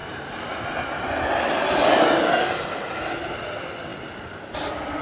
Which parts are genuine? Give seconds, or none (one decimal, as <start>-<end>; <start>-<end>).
0.0-5.0